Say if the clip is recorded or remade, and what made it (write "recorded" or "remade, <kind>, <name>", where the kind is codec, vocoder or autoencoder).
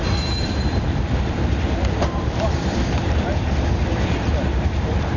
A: remade, vocoder, BigVGAN v2